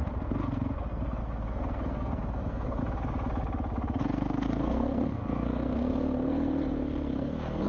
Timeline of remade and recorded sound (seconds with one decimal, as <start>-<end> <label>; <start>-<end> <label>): 0.0-2.8 remade; 2.8-4.0 recorded; 4.0-7.7 remade